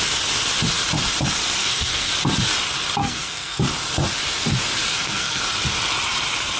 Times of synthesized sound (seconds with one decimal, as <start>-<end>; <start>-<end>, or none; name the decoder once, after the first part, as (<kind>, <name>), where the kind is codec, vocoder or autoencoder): 1.6-2.1 (codec, SNAC); 3.0-3.6; 4.9-5.4